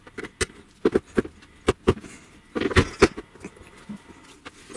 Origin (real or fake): real